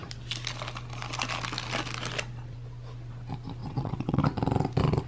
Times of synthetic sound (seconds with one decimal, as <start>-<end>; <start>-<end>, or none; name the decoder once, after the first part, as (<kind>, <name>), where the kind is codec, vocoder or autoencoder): 3.6-4.2 (vocoder, WaveNeXt)